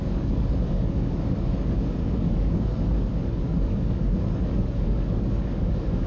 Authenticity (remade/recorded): remade